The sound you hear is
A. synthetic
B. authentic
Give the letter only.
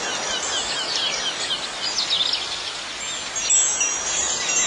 B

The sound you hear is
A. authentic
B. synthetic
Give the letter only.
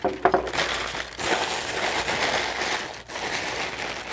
A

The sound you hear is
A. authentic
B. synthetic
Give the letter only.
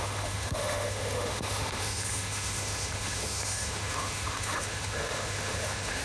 B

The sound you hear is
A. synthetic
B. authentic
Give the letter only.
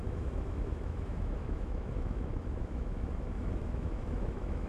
A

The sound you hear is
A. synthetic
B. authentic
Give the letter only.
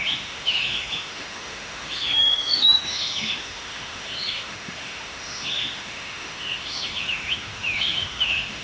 A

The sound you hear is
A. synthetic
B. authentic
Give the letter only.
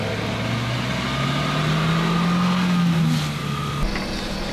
B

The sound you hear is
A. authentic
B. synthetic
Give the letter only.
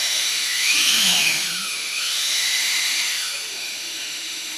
B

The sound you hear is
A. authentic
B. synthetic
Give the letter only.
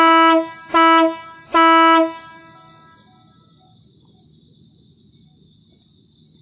A